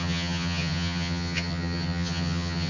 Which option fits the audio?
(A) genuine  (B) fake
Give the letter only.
B